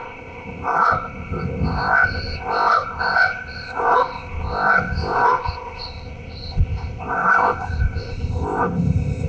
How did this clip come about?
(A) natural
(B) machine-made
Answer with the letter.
B